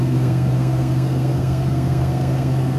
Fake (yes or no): yes